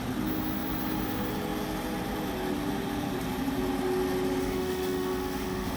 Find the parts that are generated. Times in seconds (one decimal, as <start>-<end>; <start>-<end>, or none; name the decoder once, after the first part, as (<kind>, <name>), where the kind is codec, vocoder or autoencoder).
4.4-5.8 (autoencoder, DAC-VAE)

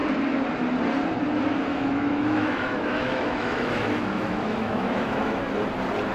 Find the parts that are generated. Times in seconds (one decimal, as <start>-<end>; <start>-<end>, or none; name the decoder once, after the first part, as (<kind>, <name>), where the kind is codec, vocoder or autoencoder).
1.7-5.4 (autoencoder, DAC-VAE)

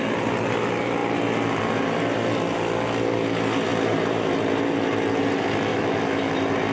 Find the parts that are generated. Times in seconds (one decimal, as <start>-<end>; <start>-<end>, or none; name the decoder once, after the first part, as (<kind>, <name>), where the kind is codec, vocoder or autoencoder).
5.7-6.3 (autoencoder, DAC-VAE)

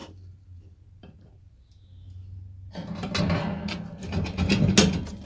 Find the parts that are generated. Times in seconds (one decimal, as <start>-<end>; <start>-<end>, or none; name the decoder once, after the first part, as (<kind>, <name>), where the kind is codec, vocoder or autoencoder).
none

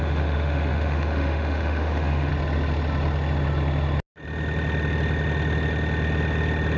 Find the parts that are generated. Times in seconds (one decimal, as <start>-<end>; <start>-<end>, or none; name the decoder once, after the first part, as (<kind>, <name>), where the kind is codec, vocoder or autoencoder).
0.0-2.3 (autoencoder, DAC-VAE)